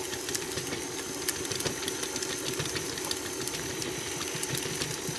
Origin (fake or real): real